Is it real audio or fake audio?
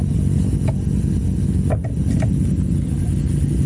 real